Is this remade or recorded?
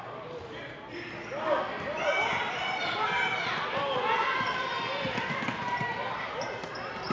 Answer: recorded